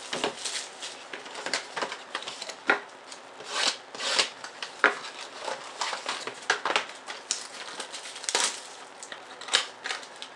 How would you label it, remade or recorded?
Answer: recorded